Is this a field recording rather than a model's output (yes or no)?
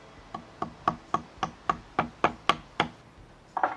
yes